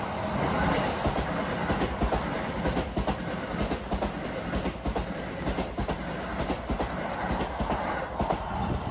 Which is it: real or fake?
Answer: real